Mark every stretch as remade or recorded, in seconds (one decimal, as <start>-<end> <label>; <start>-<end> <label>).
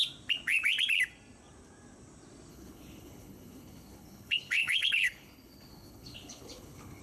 0.0-2.5 recorded; 2.5-7.0 remade